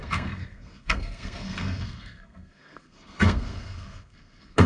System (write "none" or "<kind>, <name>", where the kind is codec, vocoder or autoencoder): codec, SNAC